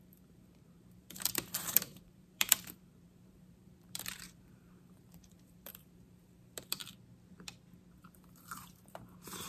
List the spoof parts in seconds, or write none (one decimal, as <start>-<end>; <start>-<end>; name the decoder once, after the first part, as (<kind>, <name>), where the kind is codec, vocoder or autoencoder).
0.0-6.8 (vocoder, BigVGAN v2); 7.9-9.5